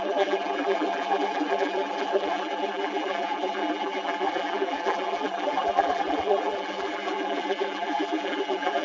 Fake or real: fake